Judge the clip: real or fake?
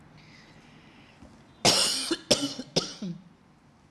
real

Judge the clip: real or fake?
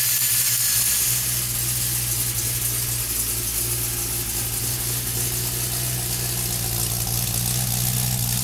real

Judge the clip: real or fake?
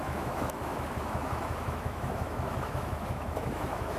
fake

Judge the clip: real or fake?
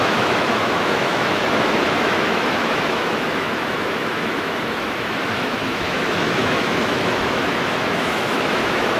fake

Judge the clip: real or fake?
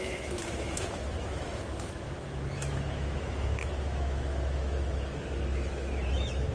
fake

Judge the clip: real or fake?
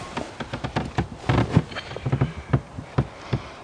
real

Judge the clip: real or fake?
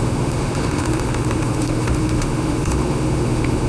fake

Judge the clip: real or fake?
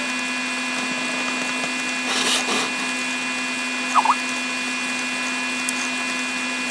real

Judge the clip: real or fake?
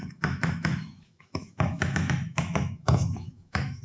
fake